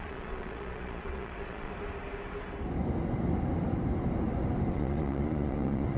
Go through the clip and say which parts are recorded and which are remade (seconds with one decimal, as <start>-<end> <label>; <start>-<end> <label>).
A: 0.0-1.7 remade; 1.7-4.7 recorded; 4.7-6.0 remade